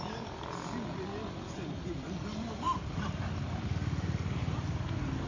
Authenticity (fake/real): real